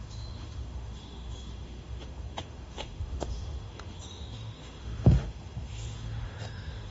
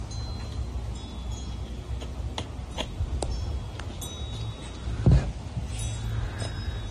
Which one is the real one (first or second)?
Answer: second